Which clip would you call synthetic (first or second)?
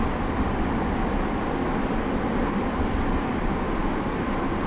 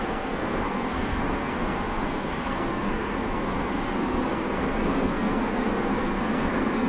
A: second